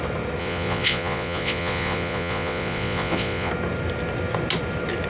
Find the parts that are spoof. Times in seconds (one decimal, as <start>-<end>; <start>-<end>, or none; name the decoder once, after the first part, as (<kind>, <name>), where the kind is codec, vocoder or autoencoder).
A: 0.4-3.5 (vocoder, Vocos)